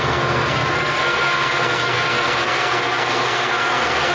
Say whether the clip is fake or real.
fake